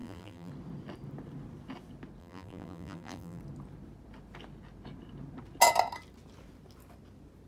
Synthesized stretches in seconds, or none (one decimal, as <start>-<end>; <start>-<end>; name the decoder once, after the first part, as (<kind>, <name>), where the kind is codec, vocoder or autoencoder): 0.0-0.5 (vocoder, BigVGAN v2); 2.2-3.4